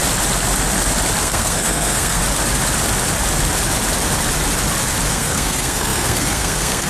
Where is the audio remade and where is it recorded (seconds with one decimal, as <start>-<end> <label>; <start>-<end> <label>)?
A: 0.0-1.2 recorded; 1.2-2.2 remade; 2.2-5.1 recorded; 5.1-6.9 remade

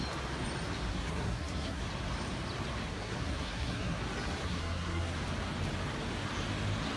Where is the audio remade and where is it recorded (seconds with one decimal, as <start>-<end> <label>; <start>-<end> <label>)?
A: 0.0-0.9 recorded; 0.9-1.8 remade; 1.8-2.9 recorded; 2.9-4.0 remade; 4.0-4.4 recorded; 4.4-5.2 remade; 5.2-7.0 recorded

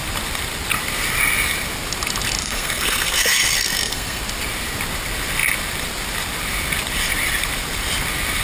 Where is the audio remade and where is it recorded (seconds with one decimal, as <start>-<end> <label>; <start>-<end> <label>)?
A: 0.0-2.4 recorded; 2.4-4.2 remade; 4.2-8.4 recorded

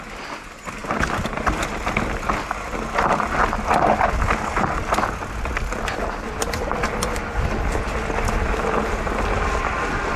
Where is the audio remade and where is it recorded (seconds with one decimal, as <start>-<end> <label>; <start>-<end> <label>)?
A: 0.0-10.2 recorded